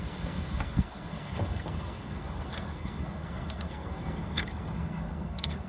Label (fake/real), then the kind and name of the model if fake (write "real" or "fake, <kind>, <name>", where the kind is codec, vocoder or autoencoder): fake, codec, SNAC